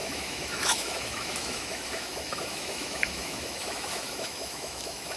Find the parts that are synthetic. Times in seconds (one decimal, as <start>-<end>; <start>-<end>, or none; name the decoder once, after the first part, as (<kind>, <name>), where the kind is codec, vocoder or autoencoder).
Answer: 0.0-5.2 (autoencoder, DAC-VAE)